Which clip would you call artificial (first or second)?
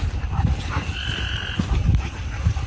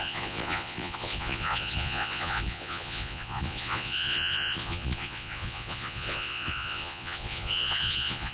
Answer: second